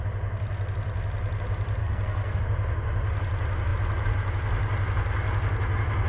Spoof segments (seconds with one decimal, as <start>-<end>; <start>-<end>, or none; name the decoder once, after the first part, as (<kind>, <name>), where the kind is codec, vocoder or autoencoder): 1.8-2.4 (codec, SNAC)